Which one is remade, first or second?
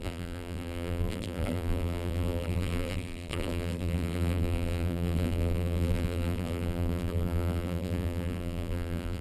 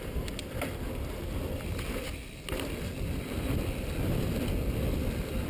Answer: first